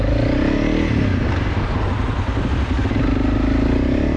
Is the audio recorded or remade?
recorded